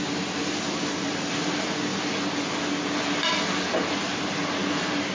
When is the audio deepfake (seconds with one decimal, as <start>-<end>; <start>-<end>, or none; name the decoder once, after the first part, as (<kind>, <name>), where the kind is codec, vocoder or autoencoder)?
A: none